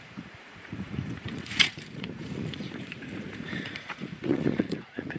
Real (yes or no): no